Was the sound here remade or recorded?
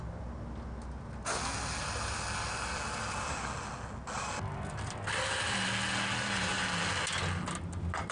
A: recorded